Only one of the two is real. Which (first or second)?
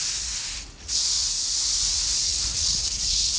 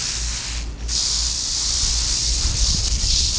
second